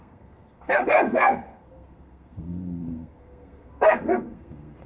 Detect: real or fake fake